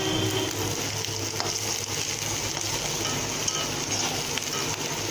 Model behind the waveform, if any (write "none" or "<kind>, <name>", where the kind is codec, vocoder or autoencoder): none